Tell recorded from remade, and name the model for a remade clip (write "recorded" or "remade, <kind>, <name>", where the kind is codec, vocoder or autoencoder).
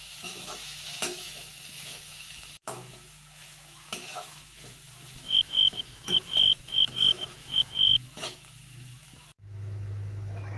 remade, autoencoder, DAC-VAE